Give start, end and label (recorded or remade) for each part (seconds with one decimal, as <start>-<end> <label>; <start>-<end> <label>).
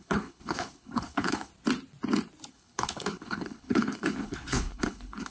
0.0-1.5 remade; 1.5-2.5 recorded; 2.5-5.3 remade